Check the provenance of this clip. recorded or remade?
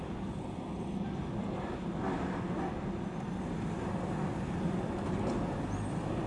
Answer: recorded